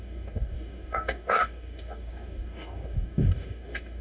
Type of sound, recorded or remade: remade